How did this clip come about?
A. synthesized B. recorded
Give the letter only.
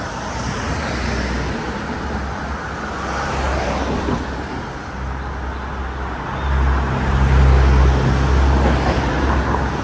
B